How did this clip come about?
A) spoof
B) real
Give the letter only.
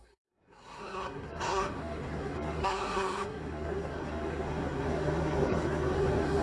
A